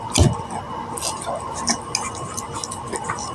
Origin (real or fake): real